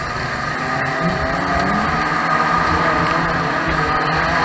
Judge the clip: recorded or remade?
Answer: recorded